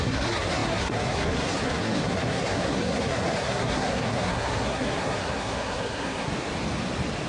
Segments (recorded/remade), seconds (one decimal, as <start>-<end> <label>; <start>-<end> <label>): 0.0-6.3 remade; 6.3-7.3 recorded